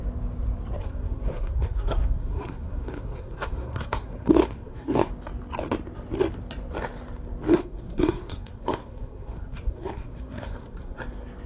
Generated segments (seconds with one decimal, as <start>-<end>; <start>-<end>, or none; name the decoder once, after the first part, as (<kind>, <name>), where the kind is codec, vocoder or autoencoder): 0.8-5.1 (codec, SNAC); 7.5-11.0